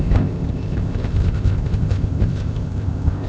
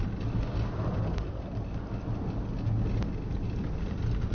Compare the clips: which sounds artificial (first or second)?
first